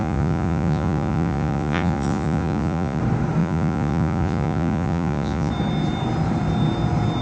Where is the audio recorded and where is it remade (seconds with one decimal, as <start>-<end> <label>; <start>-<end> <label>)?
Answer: 0.0-3.0 remade; 3.0-3.4 recorded; 3.4-5.5 remade; 5.5-7.2 recorded